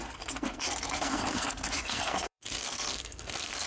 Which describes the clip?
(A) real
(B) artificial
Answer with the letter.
B